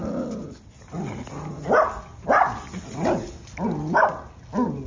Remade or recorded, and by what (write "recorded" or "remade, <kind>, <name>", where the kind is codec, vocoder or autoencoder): recorded